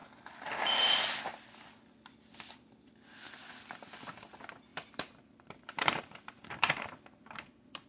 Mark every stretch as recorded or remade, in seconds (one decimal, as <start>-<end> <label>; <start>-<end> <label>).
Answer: 0.0-4.7 recorded; 4.7-7.9 remade